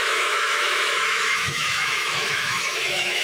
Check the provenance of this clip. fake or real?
fake